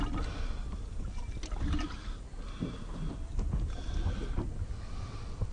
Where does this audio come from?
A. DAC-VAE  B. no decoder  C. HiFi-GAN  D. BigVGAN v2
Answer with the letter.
B